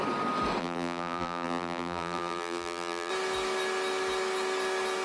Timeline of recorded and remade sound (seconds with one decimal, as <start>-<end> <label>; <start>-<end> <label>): 0.0-0.6 recorded; 0.6-3.1 remade; 3.1-5.0 recorded